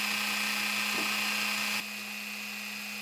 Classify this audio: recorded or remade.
recorded